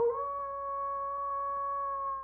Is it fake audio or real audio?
real